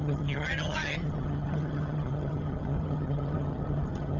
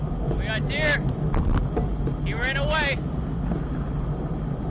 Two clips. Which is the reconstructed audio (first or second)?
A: first